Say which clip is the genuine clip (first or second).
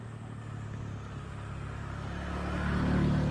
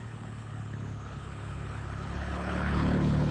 first